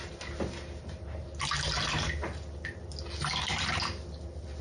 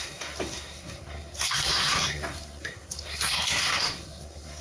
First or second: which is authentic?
first